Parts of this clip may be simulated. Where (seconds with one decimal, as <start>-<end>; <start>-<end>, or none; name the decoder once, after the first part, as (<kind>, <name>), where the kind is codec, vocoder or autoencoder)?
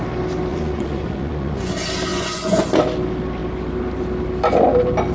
0.5-1.7 (vocoder, Vocos); 2.1-2.6